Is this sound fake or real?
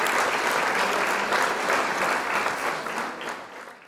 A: real